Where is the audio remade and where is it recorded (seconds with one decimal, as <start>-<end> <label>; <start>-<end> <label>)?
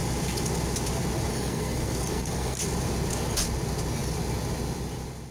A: 0.0-1.3 recorded; 1.3-2.6 remade; 2.6-5.3 recorded